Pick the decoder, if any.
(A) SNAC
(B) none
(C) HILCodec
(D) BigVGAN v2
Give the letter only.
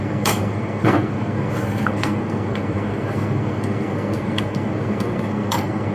A